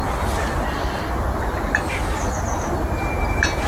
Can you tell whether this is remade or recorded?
recorded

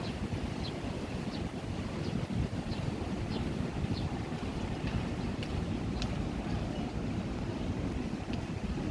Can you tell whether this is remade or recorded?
remade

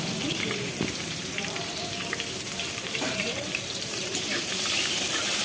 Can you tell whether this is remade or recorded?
remade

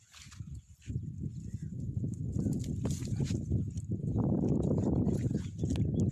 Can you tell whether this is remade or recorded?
recorded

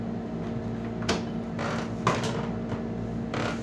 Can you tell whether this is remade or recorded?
recorded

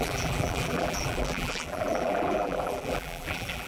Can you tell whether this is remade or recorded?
remade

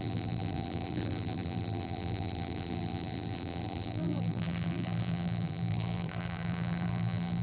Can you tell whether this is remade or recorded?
remade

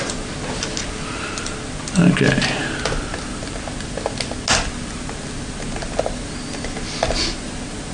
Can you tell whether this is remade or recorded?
recorded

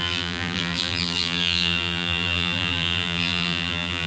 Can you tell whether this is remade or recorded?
remade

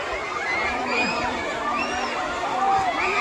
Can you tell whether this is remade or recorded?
recorded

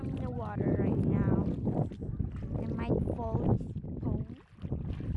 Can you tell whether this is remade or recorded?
recorded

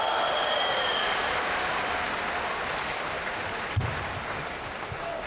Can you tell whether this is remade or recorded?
recorded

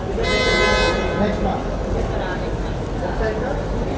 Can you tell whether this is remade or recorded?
recorded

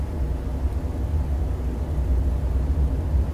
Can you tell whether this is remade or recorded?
recorded